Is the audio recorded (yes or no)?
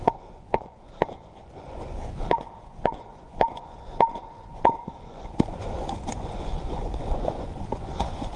no